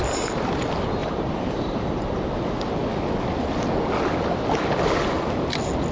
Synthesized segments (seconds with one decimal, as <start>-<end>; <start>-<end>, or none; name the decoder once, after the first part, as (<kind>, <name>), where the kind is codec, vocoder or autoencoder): 1.0-2.2 (vocoder, BigVGAN v2)

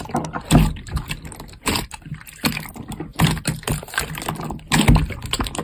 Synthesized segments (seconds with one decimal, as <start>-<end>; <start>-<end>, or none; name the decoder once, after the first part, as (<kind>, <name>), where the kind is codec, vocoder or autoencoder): 3.1-4.2 (vocoder, BigVGAN v2)

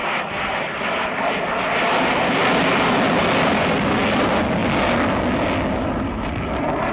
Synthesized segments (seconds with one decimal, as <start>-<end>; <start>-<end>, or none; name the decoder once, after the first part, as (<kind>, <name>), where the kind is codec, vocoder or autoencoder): 0.0-2.4 (vocoder, BigVGAN v2); 3.5-4.6; 6.3-6.9